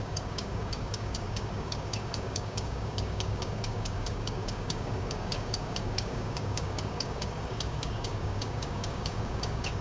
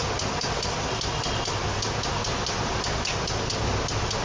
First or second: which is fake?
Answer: first